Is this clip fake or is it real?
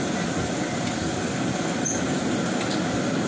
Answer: real